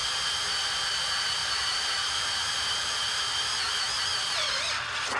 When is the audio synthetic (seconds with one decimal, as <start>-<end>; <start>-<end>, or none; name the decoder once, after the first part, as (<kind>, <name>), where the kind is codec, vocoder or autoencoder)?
1.4-4.5 (vocoder, BigVGAN v2)